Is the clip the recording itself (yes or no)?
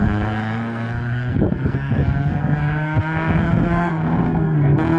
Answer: no